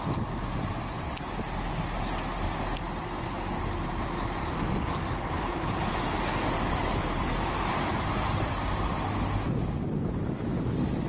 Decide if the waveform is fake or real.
real